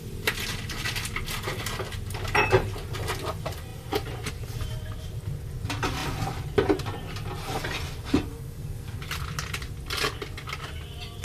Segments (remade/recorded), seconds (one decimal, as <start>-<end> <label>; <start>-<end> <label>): 0.0-8.3 recorded; 8.3-9.0 remade; 9.0-11.2 recorded